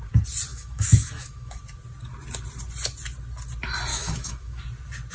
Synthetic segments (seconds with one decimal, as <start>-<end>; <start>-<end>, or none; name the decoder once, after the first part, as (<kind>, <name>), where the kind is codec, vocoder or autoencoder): 0.5-1.6 (autoencoder, DAC-VAE); 3.9-4.6